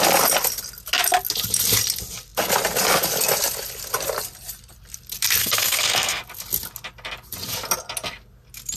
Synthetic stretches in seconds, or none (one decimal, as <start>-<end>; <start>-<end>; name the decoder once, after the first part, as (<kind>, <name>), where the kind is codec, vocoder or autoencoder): 5.4-6.2 (codec, SNAC)